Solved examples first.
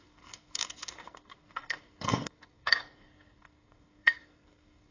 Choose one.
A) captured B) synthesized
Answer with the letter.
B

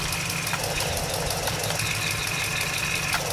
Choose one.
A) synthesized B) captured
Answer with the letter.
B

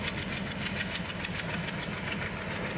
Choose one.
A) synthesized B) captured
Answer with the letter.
B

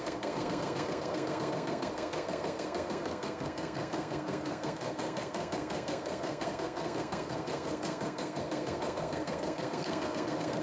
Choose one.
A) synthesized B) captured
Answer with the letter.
A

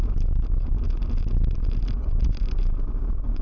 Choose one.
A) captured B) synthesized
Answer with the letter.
A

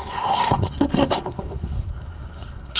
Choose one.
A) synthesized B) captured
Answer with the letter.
A